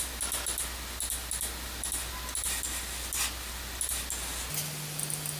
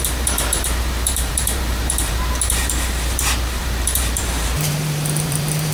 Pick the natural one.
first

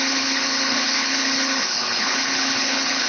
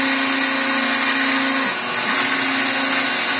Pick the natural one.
second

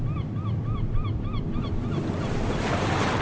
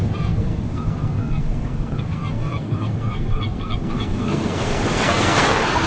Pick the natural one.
first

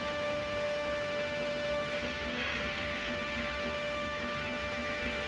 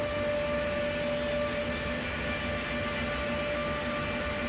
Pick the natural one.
second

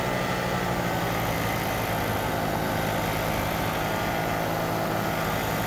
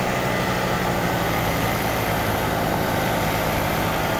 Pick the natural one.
first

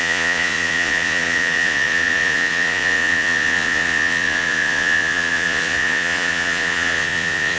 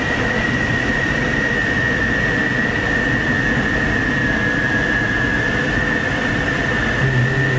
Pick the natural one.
second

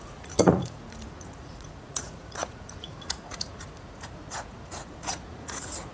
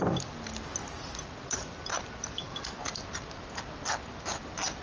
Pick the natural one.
second